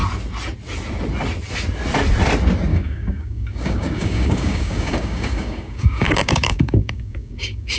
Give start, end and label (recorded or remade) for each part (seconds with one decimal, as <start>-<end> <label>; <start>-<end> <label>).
0.0-2.7 recorded; 2.7-7.8 remade